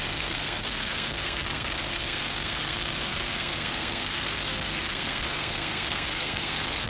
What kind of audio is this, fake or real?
fake